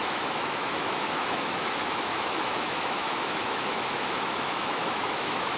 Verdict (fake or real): fake